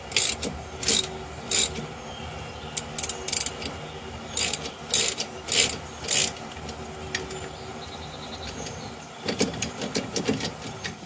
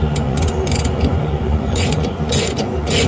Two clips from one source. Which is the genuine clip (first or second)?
first